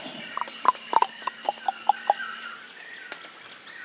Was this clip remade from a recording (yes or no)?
no